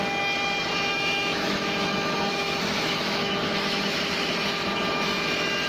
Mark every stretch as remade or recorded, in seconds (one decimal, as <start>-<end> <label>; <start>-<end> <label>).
0.0-0.9 recorded; 0.9-4.3 remade; 4.3-5.7 recorded